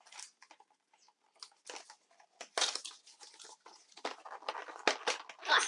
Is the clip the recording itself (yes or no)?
yes